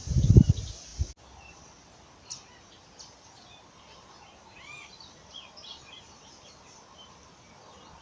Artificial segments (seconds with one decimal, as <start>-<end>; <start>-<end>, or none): none